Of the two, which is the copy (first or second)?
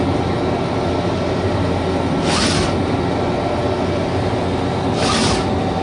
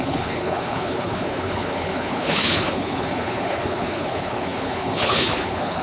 second